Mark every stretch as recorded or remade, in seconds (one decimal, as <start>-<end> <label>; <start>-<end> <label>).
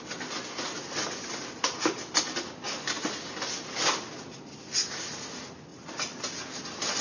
0.0-7.0 recorded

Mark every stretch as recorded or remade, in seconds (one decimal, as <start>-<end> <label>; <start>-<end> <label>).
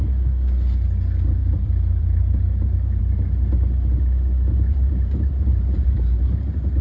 0.0-1.4 recorded; 1.4-3.0 remade; 3.0-4.7 recorded; 4.7-6.8 remade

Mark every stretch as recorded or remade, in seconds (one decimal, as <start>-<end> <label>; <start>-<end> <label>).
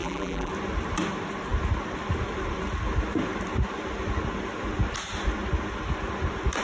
0.0-0.5 remade; 0.5-6.6 recorded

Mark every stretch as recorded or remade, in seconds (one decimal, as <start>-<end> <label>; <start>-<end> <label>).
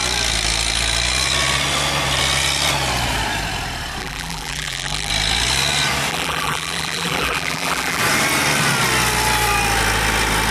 0.0-4.0 recorded; 4.0-5.1 remade; 5.1-6.1 recorded; 6.1-8.0 remade; 8.0-10.5 recorded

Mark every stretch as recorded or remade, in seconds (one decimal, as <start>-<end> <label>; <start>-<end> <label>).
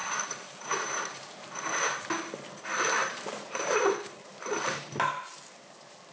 0.0-2.0 remade; 2.0-3.0 recorded; 3.0-3.9 remade; 3.9-6.1 recorded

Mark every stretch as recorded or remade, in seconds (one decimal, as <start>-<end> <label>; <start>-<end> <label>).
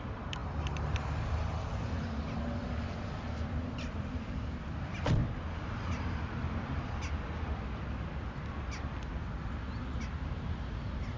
0.0-11.2 recorded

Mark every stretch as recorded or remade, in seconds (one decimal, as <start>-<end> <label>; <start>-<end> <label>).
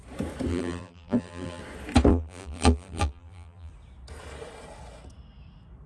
0.0-0.5 recorded; 0.5-1.6 remade; 1.6-2.1 recorded; 2.1-3.7 remade; 3.7-5.9 recorded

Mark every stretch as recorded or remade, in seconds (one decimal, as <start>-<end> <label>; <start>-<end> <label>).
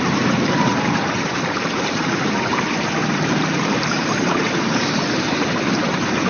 0.0-6.3 remade